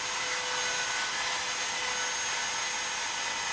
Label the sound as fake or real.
real